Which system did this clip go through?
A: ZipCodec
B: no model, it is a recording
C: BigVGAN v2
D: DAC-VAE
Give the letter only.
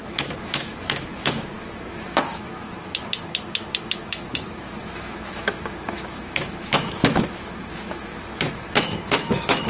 D